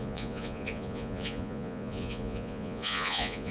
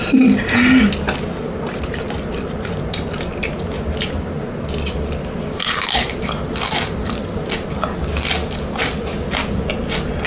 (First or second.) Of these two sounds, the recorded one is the second